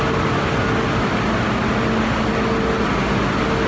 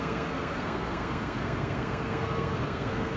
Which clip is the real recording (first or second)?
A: first